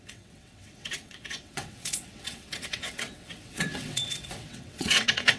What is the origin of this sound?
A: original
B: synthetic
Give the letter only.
B